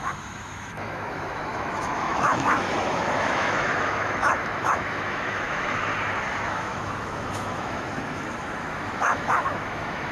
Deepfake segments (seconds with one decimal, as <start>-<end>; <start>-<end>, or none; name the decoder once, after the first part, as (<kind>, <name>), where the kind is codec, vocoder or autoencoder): 0.0-5.9 (autoencoder, DAC-VAE); 6.5-10.1